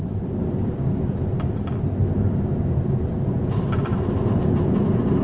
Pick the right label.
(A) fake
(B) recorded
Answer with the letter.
B